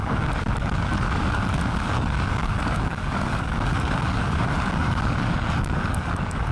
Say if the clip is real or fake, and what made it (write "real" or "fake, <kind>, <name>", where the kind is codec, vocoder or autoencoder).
fake, codec, DAC